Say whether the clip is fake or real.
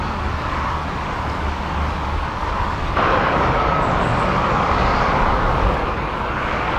fake